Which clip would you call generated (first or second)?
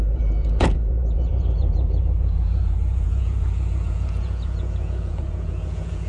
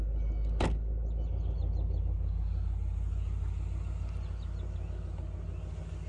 first